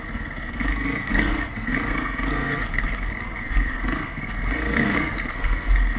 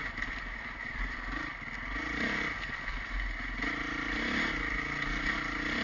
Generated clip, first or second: first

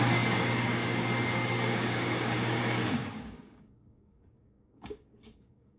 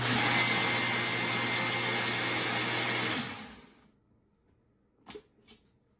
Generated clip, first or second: first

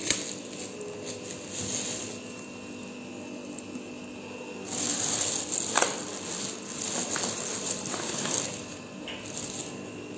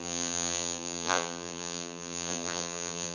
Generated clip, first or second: second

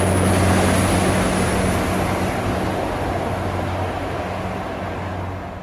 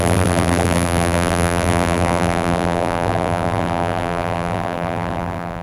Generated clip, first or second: second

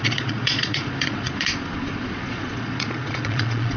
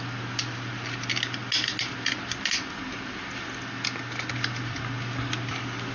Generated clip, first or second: first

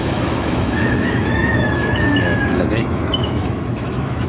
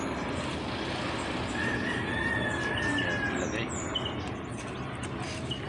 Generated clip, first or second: first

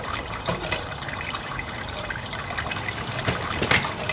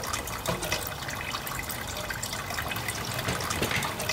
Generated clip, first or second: first